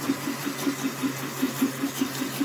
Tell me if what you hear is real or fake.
real